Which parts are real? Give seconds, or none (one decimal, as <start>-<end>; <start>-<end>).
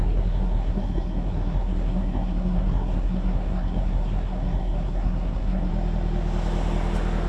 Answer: 5.7-7.3